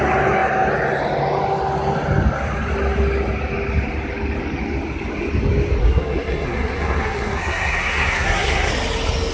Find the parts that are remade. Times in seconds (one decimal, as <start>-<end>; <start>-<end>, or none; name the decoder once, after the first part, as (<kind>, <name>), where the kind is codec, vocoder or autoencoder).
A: 5.8-8.7 (codec, SNAC)